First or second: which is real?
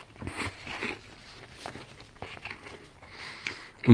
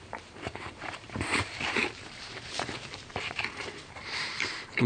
first